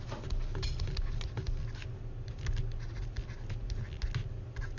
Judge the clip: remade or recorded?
recorded